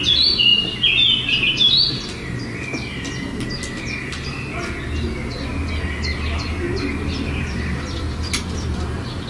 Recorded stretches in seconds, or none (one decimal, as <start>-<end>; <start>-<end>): 0.0-9.3